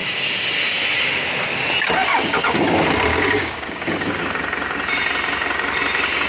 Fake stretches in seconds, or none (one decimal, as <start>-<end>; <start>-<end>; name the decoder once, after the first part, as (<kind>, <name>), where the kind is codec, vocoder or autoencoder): 3.1-4.2 (codec, DAC)